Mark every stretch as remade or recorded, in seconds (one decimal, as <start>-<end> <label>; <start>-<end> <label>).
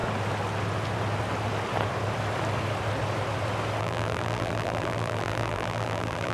0.0-3.8 recorded; 3.8-6.3 remade